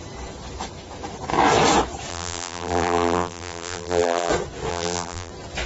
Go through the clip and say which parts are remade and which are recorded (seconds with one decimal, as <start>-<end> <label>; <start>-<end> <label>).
0.0-2.1 recorded; 2.1-4.3 remade; 4.3-4.7 recorded; 4.7-5.3 remade; 5.3-5.7 recorded

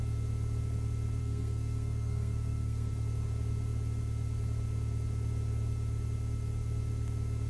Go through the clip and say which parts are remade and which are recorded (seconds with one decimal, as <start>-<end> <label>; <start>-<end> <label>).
0.0-1.2 recorded; 1.2-2.9 remade; 2.9-7.5 recorded

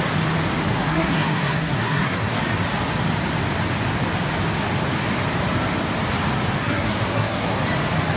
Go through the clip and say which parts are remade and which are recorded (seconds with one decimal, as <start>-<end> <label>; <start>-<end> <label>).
0.0-0.7 recorded; 0.7-2.4 remade; 2.4-6.6 recorded; 6.6-7.6 remade; 7.6-8.2 recorded

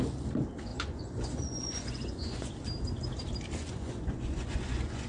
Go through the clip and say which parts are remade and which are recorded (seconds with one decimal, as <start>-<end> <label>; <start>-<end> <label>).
0.0-0.7 recorded; 0.7-2.5 remade; 2.5-3.6 recorded; 3.6-5.1 remade

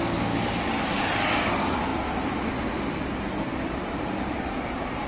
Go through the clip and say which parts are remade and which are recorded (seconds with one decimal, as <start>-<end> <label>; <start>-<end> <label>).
0.0-5.1 recorded

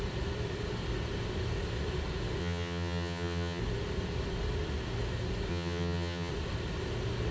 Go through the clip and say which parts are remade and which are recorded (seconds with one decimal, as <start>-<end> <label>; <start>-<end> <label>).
0.0-2.4 recorded; 2.4-3.6 remade; 3.6-5.5 recorded; 5.5-6.3 remade; 6.3-7.3 recorded